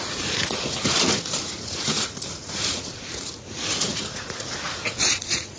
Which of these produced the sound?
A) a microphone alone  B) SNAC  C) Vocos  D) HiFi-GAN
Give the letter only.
C